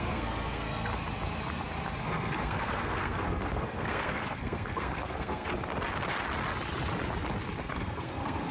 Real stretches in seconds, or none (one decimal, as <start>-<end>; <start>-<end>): 0.9-2.0; 5.5-7.6